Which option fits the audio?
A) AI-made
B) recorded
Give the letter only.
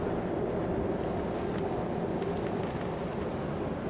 B